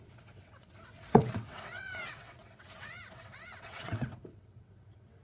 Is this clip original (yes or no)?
no